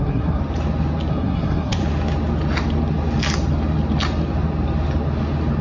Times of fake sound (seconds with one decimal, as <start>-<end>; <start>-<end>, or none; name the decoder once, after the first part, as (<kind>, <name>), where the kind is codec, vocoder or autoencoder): 0.0-0.4 (codec, SNAC); 1.1-1.8